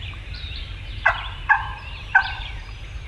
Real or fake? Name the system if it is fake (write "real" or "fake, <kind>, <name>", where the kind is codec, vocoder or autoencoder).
fake, vocoder, BigVGAN v2